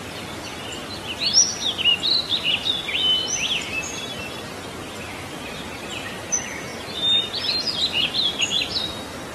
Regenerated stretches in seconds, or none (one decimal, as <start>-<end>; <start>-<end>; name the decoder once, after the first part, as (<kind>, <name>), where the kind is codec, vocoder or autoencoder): none